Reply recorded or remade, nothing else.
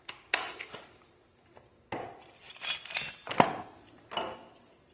recorded